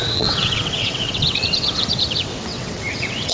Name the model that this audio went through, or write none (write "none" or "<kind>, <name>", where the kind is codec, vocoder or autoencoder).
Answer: vocoder, WaveNeXt